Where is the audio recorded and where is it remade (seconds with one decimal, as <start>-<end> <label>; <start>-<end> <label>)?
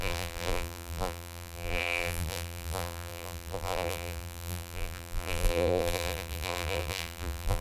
0.0-7.6 remade